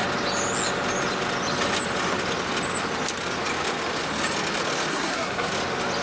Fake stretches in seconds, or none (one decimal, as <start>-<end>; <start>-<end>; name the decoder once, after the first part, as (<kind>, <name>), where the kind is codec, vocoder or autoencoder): 4.9-5.5 (codec, SNAC)